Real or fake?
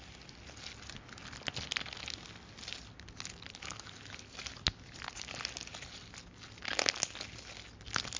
real